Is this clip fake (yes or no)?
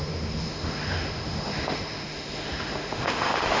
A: yes